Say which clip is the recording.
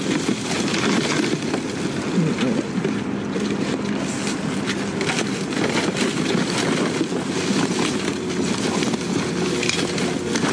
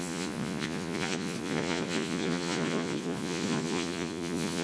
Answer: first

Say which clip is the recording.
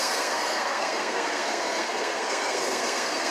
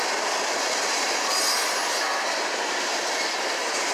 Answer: second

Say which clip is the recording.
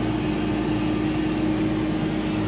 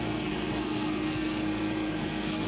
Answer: first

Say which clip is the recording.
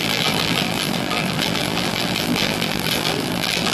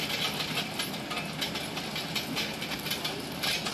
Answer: second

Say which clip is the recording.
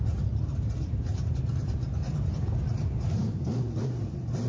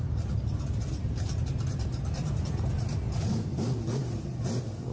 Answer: second